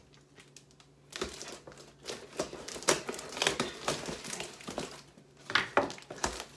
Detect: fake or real real